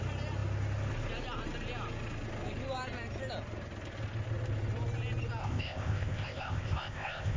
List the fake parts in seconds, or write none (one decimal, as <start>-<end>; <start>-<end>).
5.4-7.4

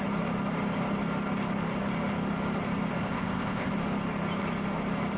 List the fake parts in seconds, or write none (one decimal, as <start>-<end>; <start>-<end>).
3.0-3.7

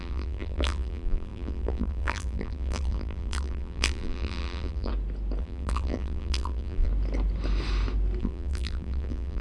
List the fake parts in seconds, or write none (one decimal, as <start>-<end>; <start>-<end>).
0.0-4.9; 5.4-6.9; 8.2-9.4

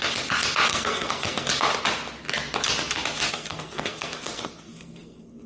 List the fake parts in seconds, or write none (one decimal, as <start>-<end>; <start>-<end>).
0.7-1.5; 3.3-5.5

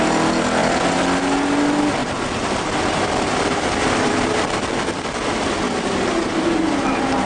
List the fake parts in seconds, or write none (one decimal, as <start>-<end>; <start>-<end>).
2.0-6.1

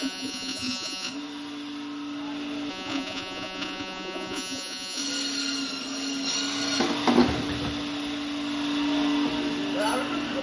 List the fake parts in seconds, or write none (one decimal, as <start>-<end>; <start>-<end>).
0.0-1.1; 2.7-5.0